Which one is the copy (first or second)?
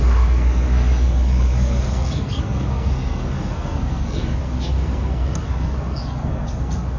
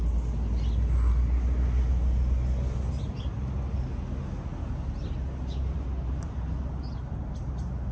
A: first